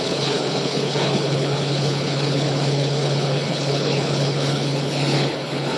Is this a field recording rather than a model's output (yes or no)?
no